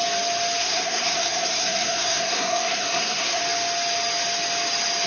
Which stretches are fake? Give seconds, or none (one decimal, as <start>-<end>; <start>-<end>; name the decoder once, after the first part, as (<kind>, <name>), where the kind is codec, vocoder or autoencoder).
0.6-3.4 (codec, SNAC)